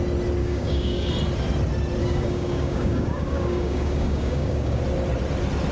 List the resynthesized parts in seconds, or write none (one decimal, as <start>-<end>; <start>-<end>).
0.4-1.1; 2.0-4.8